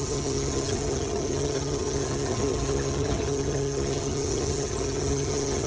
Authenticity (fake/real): fake